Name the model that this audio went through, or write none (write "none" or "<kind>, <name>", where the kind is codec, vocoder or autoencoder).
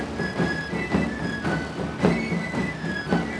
none